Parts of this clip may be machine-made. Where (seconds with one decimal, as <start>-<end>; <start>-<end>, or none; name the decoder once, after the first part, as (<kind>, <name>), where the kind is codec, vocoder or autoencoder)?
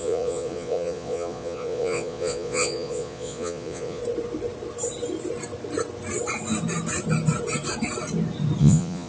0.0-4.0 (vocoder, Vocos); 8.6-9.1